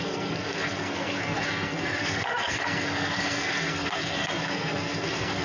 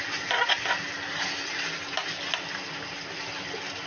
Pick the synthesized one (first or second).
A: first